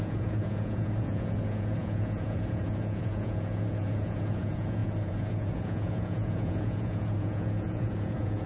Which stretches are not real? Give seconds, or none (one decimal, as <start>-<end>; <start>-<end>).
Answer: 0.0-8.5